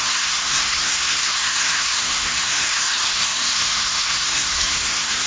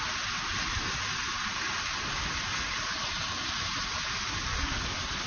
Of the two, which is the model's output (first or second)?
first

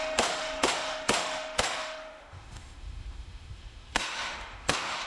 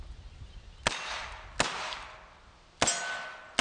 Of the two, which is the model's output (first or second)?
first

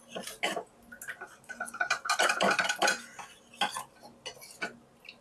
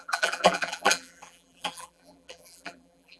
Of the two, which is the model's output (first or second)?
second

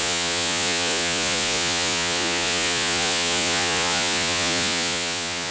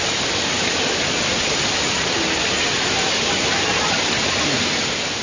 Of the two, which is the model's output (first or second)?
first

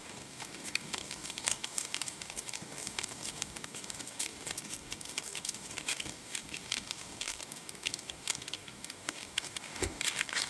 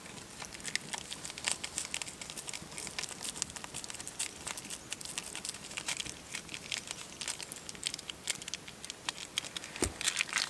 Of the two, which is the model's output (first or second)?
first